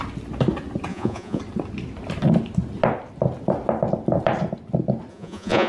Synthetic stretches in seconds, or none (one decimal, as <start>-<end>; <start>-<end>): 0.9-1.4; 5.1-5.7